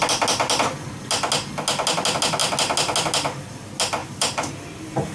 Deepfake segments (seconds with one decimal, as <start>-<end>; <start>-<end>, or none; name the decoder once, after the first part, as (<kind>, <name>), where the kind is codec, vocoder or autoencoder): 4.0-4.5 (vocoder, BigVGAN v2)